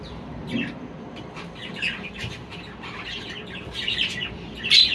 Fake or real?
fake